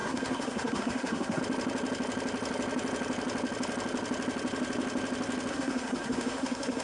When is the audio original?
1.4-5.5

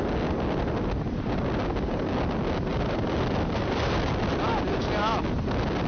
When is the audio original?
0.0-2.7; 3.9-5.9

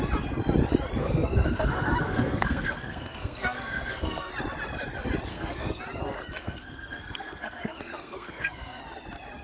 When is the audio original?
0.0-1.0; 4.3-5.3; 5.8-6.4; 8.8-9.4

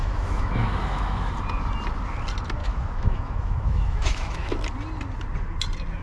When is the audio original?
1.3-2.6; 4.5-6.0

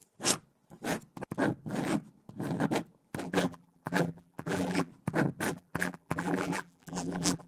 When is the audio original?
0.0-3.2; 4.9-5.5

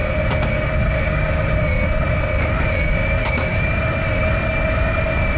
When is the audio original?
0.0-0.8; 1.5-3.2; 3.7-5.4